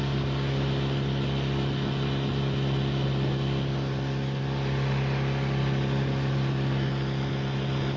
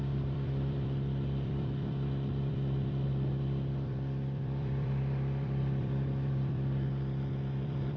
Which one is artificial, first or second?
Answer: second